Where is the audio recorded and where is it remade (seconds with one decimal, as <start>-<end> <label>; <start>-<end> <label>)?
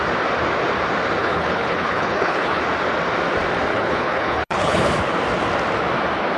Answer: 0.0-1.2 recorded; 1.2-2.6 remade; 2.6-3.7 recorded; 3.7-4.9 remade; 4.9-6.4 recorded